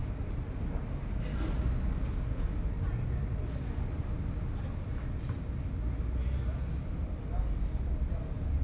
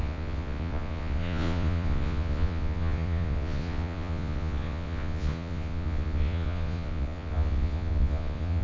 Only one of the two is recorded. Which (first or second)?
first